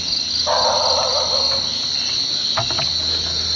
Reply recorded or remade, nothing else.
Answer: recorded